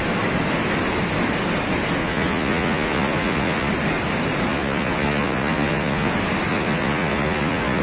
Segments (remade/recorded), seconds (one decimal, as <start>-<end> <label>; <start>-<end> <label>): 0.0-2.0 recorded; 2.0-3.7 remade; 3.7-4.5 recorded; 4.5-6.1 remade; 6.1-6.5 recorded; 6.5-7.8 remade